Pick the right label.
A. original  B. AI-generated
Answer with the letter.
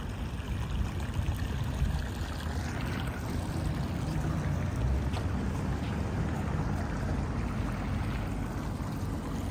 A